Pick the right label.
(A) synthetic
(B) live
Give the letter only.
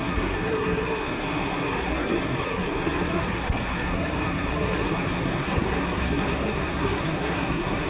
A